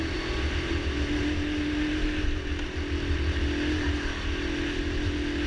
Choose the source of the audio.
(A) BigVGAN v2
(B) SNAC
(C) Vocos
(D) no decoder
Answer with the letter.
D